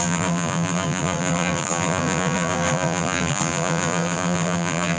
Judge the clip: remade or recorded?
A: remade